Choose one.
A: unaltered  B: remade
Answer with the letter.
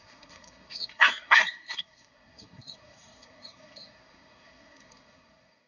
B